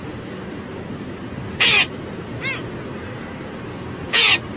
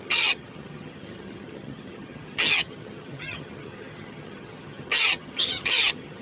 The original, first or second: first